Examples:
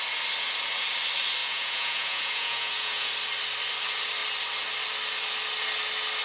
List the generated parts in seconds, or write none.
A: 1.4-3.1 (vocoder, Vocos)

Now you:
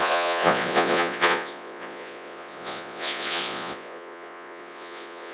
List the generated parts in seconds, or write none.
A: 0.0-5.3 (vocoder, Vocos)

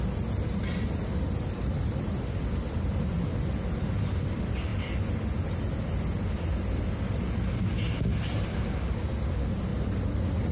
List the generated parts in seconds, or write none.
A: none